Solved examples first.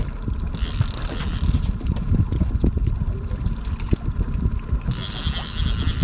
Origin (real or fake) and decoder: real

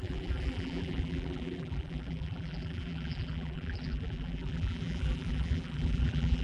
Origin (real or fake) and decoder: fake, vocoder, BigVGAN v2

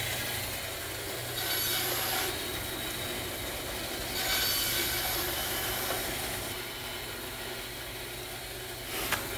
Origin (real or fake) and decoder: real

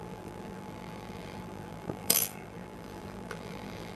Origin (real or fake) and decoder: fake, vocoder, BigVGAN v2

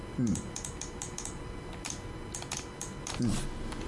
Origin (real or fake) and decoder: real